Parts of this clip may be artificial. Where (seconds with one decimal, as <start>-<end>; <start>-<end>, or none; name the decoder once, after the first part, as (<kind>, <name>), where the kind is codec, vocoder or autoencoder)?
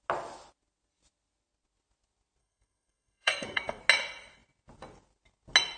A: 2.4-3.8 (codec, SNAC)